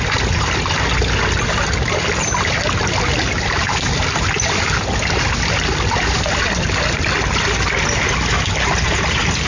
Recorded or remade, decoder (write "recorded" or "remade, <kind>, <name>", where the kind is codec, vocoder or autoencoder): recorded